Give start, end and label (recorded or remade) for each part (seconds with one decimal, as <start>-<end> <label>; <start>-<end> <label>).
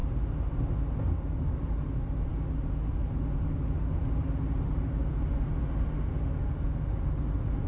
0.0-7.7 recorded